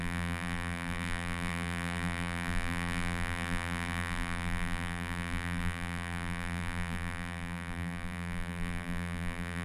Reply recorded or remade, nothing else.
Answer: remade